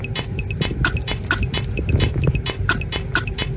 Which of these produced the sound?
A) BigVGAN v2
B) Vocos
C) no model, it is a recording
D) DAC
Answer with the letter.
C